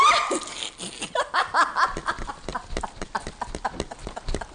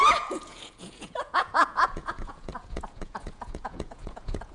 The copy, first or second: second